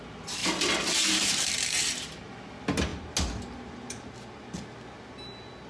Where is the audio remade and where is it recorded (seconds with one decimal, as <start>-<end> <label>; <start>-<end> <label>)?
0.0-5.7 recorded